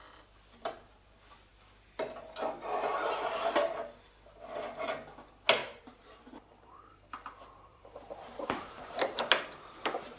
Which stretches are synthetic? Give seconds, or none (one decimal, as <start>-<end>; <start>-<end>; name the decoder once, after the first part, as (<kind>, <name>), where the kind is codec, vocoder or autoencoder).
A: 5.6-6.9 (vocoder, BigVGAN v2); 7.7-9.2